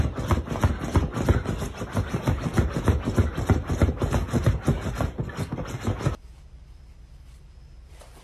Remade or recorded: recorded